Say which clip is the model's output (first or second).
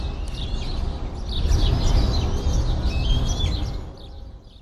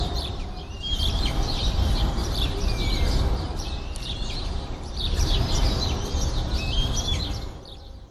second